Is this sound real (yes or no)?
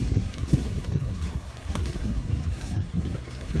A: no